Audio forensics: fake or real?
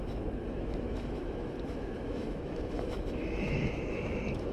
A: fake